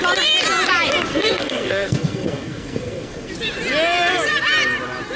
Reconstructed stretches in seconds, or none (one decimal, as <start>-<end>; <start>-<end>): 1.1-3.3